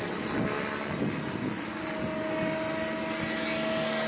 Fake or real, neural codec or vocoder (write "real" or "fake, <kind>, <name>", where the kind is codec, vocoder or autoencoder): real